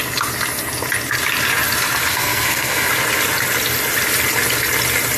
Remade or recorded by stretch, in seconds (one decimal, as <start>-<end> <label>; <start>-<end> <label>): 0.0-2.1 recorded; 2.1-2.9 remade; 2.9-5.2 recorded